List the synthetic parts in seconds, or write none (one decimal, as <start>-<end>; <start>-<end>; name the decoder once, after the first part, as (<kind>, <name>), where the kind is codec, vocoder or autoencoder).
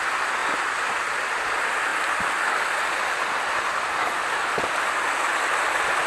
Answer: none